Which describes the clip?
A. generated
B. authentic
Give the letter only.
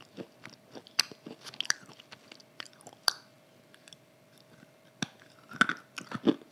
B